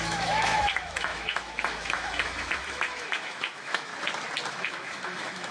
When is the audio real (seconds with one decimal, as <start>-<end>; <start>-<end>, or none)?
3.9-4.5